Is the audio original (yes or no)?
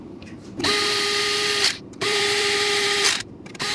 no